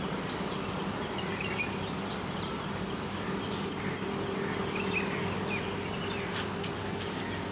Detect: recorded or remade recorded